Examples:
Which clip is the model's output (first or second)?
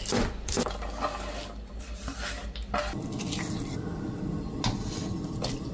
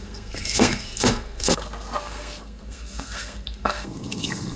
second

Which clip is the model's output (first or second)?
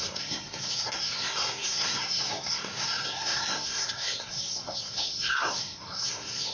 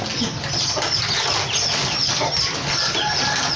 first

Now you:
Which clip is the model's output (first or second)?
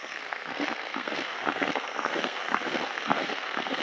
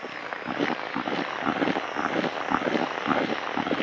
first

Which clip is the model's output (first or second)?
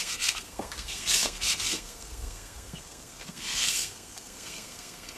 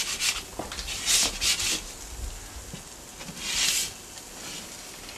first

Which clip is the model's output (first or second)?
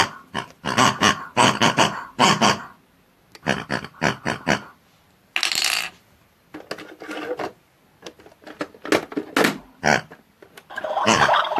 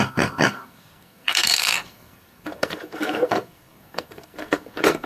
second